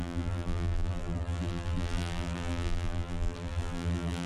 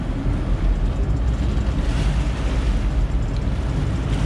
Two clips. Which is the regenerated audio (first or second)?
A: first